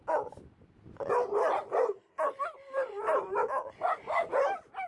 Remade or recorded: recorded